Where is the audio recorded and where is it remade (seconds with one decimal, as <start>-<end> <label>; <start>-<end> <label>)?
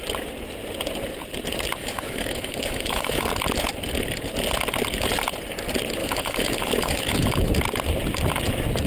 0.0-1.8 recorded; 1.8-3.3 remade; 3.3-6.0 recorded; 6.0-7.6 remade; 7.6-8.9 recorded